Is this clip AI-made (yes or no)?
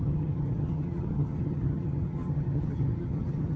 yes